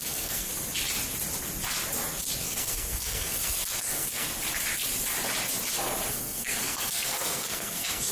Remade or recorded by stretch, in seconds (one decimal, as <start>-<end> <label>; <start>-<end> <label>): 0.0-0.5 remade; 0.5-2.4 recorded; 2.4-4.3 remade; 4.3-6.1 recorded; 6.1-8.1 remade